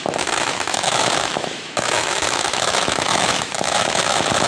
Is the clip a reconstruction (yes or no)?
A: yes